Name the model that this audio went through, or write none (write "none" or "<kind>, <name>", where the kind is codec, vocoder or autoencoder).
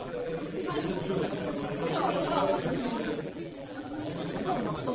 vocoder, BigVGAN v2